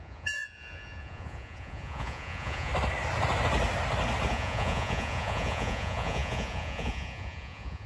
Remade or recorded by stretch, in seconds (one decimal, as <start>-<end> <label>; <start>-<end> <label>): 0.0-2.7 remade; 2.7-4.3 recorded; 4.3-7.9 remade